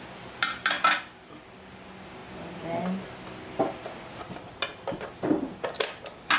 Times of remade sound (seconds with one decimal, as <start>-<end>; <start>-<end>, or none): none

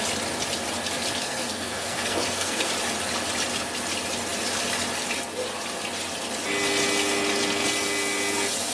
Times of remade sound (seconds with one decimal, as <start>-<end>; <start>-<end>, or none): 1.2-2.7

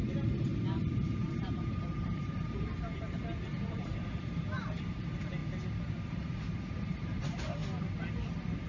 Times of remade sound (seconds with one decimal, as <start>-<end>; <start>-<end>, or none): 0.0-5.4; 6.0-7.6

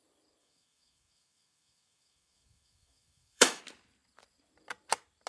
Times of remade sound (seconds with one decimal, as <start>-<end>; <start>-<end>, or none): 0.4-3.6

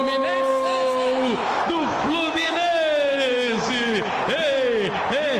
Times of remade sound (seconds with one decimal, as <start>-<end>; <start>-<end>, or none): 0.5-3.7